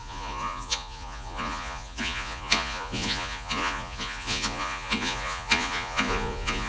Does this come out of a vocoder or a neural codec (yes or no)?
yes